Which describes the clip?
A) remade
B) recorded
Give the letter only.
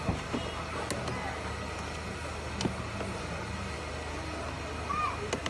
B